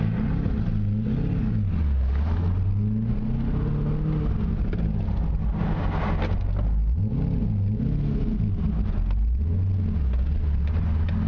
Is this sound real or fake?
real